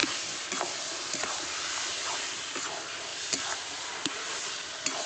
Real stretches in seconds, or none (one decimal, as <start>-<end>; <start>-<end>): 0.8-5.1